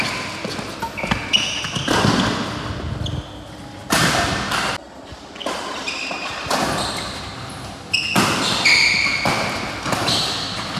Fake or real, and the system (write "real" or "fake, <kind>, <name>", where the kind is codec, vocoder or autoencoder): real